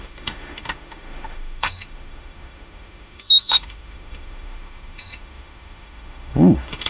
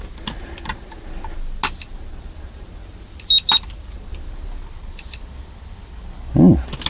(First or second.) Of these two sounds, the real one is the second